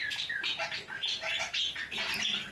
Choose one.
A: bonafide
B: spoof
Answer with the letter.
A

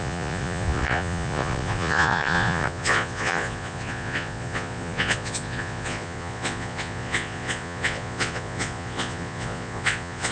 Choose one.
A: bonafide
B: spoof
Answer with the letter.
B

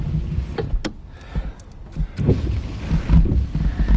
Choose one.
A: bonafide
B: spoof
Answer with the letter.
A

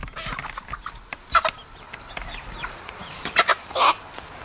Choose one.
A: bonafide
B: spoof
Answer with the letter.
A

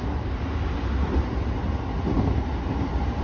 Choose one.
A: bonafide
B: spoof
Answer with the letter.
A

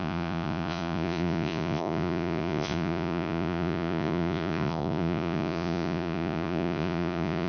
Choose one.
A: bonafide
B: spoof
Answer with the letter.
B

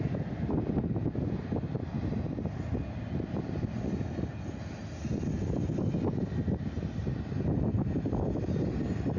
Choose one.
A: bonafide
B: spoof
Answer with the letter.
A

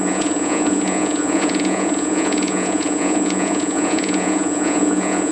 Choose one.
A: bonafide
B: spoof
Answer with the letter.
B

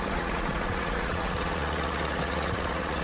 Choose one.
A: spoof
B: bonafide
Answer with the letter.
A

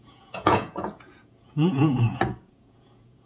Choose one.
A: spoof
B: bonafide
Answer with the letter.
A